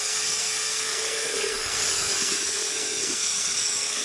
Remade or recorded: remade